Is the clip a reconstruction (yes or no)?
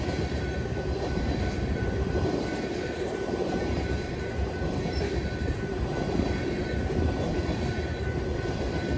yes